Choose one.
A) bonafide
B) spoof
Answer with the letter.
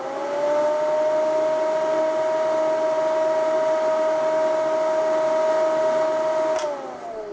A